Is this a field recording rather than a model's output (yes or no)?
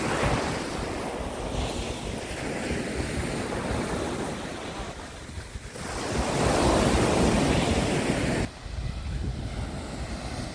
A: yes